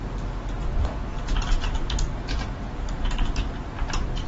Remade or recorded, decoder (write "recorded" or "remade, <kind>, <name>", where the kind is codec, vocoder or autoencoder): recorded